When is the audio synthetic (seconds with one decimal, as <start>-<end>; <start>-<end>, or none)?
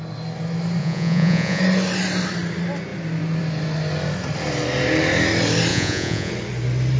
0.8-1.6; 5.7-6.3